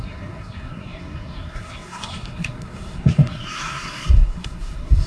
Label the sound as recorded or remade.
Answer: remade